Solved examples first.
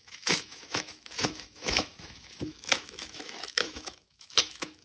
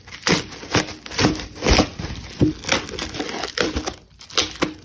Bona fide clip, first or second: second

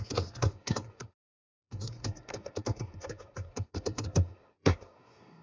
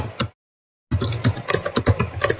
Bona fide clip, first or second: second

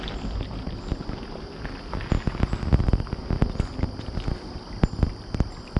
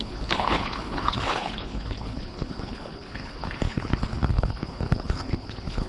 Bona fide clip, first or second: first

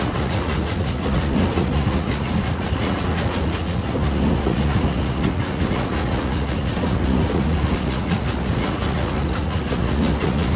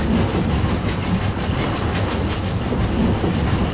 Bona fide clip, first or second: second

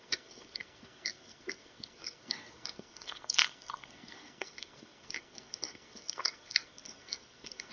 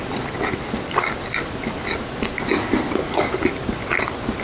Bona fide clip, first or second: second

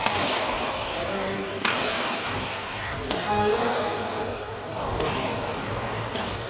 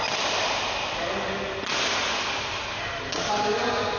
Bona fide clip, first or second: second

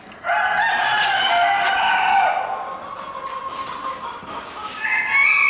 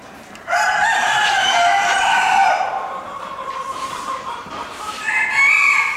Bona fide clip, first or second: first